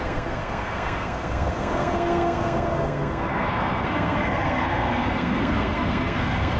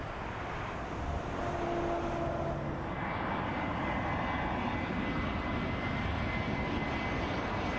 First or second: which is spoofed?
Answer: first